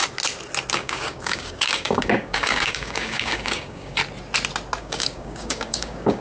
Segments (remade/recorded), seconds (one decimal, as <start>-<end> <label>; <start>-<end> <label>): 0.0-0.7 recorded; 0.7-4.0 remade; 4.0-4.8 recorded; 4.8-6.2 remade